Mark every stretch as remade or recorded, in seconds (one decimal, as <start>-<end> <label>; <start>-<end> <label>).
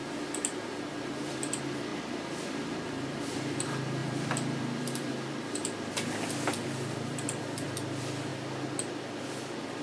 0.0-8.3 remade; 8.3-9.2 recorded; 9.2-9.8 remade